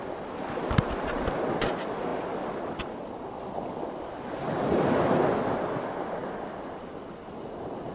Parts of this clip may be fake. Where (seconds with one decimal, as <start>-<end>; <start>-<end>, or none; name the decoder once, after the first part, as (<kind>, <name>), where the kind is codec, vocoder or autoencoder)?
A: none